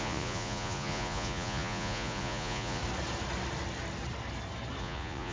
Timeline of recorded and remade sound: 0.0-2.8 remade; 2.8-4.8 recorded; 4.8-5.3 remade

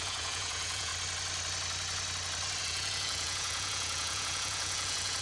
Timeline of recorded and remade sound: 0.0-0.9 remade; 0.9-2.6 recorded; 2.6-5.2 remade

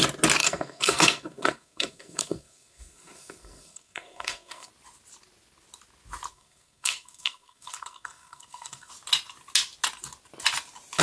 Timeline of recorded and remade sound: 0.0-0.4 recorded; 0.4-4.7 remade; 4.7-6.3 recorded; 6.3-8.9 remade; 8.9-11.0 recorded

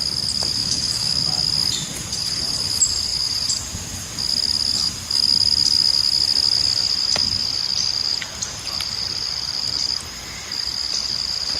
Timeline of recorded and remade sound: 0.0-0.6 recorded; 0.6-1.2 remade; 1.2-11.6 recorded

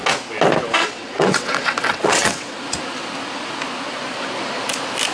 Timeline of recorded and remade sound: 0.0-0.8 recorded; 0.8-2.6 remade; 2.6-5.1 recorded